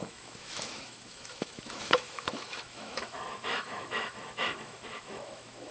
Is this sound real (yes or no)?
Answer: no